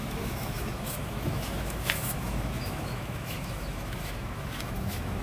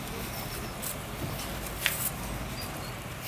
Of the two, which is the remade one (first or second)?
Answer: first